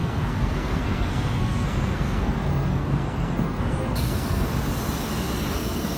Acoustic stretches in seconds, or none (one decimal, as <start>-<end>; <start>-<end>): 4.5-5.5